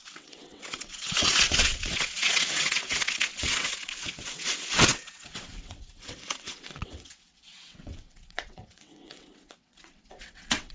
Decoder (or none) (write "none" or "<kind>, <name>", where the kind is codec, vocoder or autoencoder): vocoder, WaveNeXt